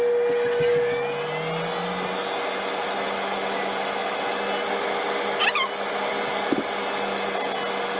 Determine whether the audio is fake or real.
real